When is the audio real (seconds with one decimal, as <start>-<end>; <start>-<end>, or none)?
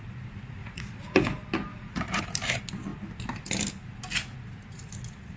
0.0-0.6; 1.2-1.7; 2.2-5.4